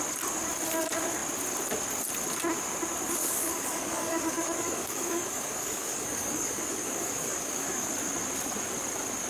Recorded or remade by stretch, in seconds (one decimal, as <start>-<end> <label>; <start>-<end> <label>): 0.0-3.2 recorded; 3.2-7.9 remade; 7.9-9.3 recorded